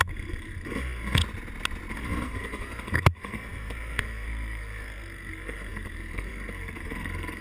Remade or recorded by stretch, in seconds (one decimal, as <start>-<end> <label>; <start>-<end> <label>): 0.0-1.2 remade; 1.2-1.9 recorded; 1.9-7.4 remade